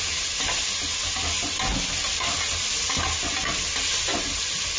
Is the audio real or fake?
real